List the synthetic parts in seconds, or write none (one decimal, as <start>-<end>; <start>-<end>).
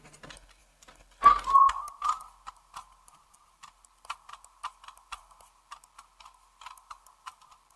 none